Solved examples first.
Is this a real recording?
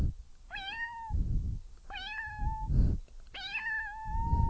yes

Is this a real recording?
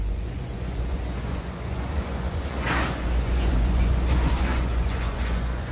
no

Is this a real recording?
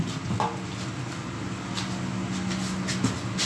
yes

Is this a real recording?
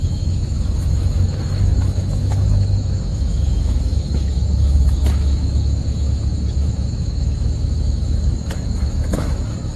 no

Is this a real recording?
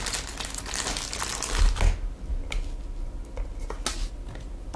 yes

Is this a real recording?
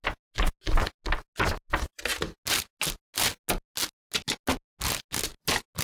yes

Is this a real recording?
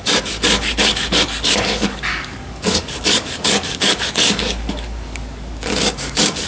no